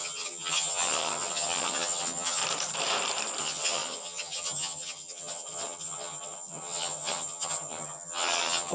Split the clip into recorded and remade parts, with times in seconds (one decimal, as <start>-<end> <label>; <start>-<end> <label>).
0.0-2.4 remade; 2.4-3.4 recorded; 3.4-8.7 remade